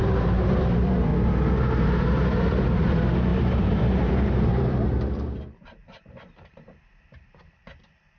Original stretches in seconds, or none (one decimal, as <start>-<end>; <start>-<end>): 1.1-2.1